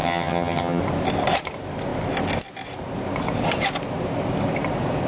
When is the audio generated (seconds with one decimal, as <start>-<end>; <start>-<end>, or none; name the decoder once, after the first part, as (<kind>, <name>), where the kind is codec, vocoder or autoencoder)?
0.0-0.8 (vocoder, HiFi-GAN)